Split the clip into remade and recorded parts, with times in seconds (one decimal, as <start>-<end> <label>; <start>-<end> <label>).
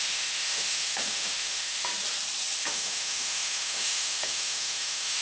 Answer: 0.0-1.9 remade; 1.9-2.6 recorded; 2.6-5.2 remade